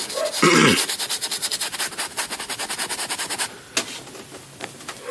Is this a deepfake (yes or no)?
no